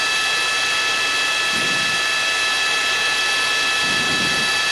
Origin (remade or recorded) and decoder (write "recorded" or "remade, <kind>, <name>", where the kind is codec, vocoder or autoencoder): recorded